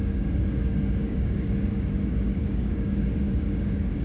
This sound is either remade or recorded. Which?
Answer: remade